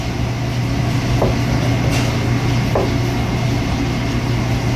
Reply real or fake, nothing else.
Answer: real